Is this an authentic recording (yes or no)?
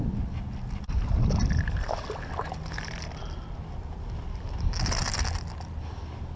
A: yes